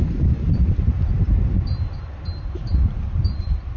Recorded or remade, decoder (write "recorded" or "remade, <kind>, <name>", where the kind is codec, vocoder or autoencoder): remade, vocoder, BigVGAN v2